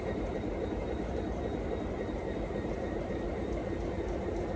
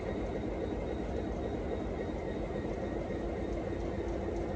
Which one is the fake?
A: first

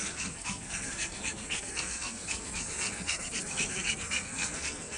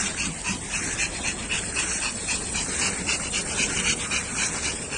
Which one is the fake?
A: first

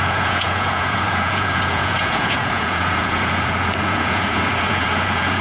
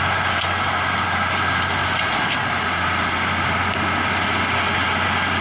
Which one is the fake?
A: first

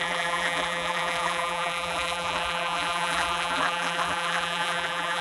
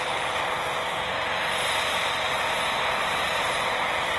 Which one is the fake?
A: first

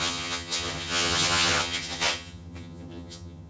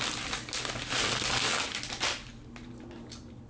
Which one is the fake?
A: first